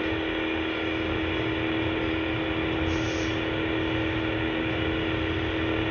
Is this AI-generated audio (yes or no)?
no